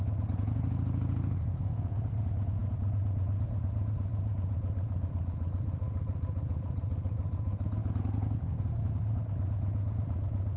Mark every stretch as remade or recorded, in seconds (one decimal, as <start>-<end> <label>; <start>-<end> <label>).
0.0-10.6 remade